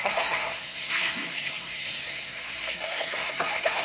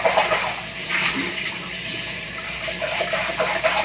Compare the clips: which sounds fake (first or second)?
first